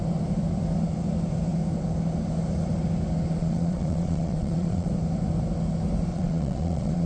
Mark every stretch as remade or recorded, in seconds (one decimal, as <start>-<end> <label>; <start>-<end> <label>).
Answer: 0.0-3.4 recorded; 3.4-4.9 remade; 4.9-6.1 recorded; 6.1-7.1 remade